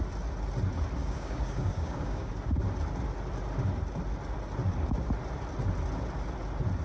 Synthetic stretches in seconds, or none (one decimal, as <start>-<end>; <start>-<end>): 1.0-2.3

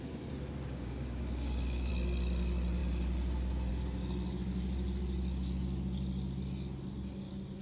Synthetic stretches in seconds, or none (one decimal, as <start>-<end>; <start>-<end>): 0.7-1.9

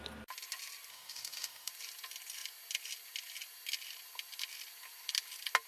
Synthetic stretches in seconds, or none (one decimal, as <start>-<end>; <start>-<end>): 0.9-1.7

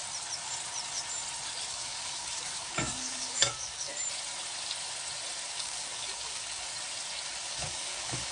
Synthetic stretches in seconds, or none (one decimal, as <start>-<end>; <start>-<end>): 1.7-3.9; 5.5-6.7; 7.5-8.3

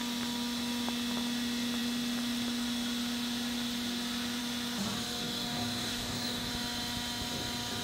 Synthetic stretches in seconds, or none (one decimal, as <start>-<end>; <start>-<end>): 5.2-6.5

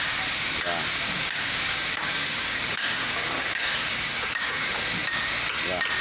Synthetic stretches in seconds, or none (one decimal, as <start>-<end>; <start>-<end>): 1.2-4.8